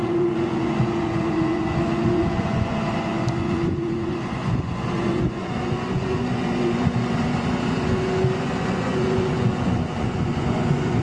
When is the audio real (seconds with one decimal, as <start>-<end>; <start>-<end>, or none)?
none

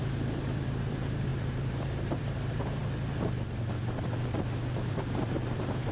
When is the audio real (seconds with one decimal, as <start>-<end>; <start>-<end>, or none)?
2.8-4.9

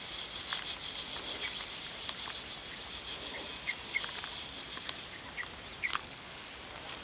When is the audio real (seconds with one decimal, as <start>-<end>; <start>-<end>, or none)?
0.0-5.9; 6.5-7.0

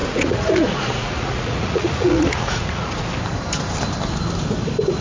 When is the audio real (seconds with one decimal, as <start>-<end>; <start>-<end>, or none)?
3.0-5.0

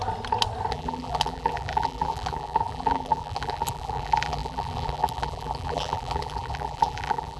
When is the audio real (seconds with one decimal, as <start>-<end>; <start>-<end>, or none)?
0.0-0.7

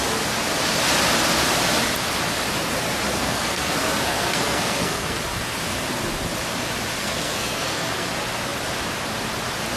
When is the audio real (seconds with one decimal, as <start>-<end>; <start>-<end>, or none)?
0.0-3.1; 5.2-7.0; 8.1-9.8

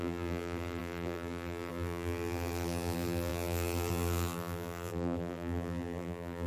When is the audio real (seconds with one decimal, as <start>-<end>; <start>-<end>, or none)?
none

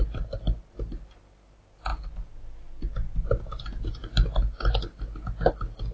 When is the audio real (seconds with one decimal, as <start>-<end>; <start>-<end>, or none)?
0.0-5.9